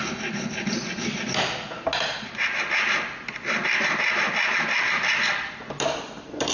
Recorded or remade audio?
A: recorded